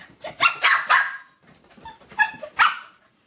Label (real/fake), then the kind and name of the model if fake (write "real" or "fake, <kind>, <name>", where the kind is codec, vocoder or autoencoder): fake, vocoder, BigVGAN v2